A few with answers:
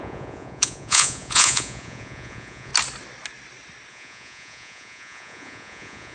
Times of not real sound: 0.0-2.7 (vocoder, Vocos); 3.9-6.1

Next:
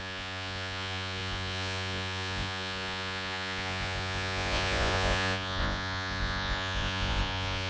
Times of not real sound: 0.0-7.7 (vocoder, Vocos)

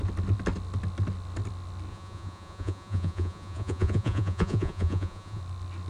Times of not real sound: 1.9-5.4 (vocoder, Vocos)